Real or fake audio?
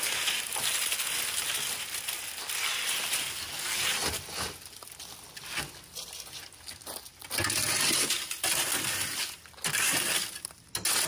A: real